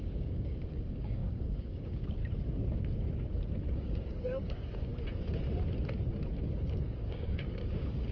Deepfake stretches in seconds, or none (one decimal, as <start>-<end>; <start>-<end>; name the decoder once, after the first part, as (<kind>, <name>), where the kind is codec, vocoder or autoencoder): 0.0-2.2 (codec, DAC); 3.7-4.9; 6.3-8.1